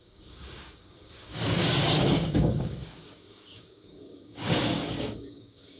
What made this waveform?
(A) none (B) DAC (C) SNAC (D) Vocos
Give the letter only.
B